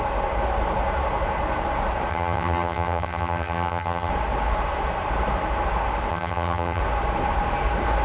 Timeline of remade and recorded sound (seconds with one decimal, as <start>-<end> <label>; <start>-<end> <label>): 0.0-2.1 recorded; 2.1-4.1 remade; 4.1-6.1 recorded; 6.1-6.8 remade; 6.8-8.0 recorded